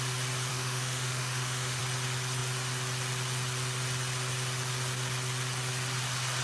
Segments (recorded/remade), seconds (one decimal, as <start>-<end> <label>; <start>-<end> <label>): 0.0-0.5 recorded; 0.5-1.8 remade; 1.8-6.4 recorded